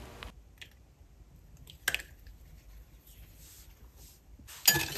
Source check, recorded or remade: recorded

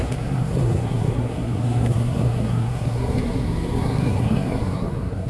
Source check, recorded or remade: remade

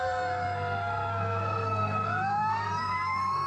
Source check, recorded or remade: remade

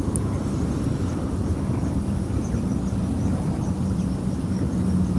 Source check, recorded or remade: recorded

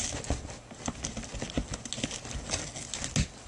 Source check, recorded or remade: recorded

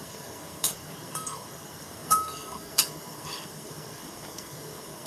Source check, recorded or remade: remade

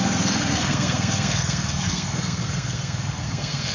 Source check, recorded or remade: remade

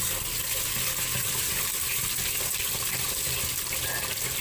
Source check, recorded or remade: recorded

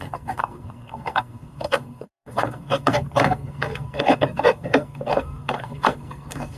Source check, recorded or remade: remade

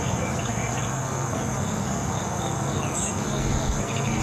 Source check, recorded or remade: remade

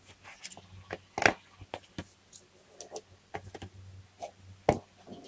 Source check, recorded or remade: recorded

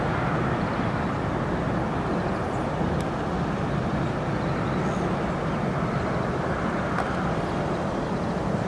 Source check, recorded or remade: recorded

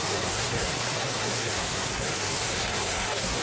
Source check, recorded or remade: remade